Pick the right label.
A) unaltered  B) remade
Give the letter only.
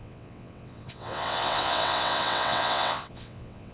B